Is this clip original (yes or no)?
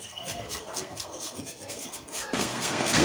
no